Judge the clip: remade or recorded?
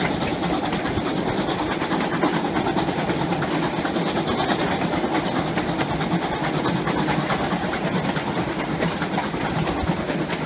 recorded